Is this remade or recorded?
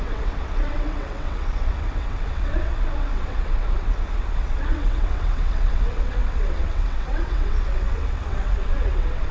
remade